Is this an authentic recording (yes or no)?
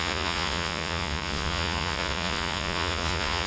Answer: no